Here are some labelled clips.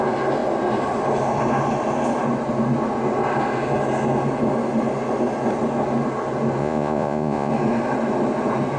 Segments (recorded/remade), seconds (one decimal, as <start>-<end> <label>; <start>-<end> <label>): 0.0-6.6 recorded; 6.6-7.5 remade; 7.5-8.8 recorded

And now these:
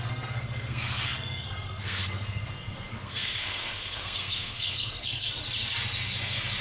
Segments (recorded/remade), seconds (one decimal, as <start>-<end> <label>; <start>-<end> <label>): 0.0-5.4 remade; 5.4-6.6 recorded

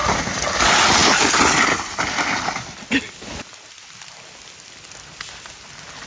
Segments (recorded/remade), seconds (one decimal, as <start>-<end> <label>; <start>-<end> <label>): 0.0-6.1 recorded

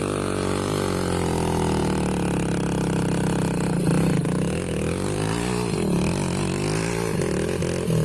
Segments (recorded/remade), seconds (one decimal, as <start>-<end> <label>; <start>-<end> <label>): 0.0-8.0 recorded

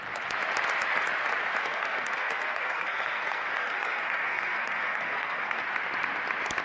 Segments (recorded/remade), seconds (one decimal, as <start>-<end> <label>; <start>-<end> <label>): 0.0-1.6 recorded; 1.6-5.6 remade; 5.6-6.6 recorded

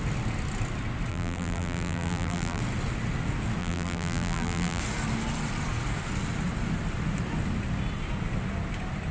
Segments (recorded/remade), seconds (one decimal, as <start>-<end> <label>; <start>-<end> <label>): 0.0-1.1 recorded; 1.1-2.6 remade; 2.6-3.6 recorded; 3.6-4.8 remade; 4.8-9.1 recorded

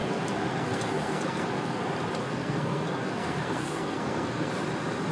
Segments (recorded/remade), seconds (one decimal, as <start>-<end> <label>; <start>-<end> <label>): 0.0-1.8 remade; 1.8-2.2 recorded; 2.2-4.5 remade; 4.5-5.1 recorded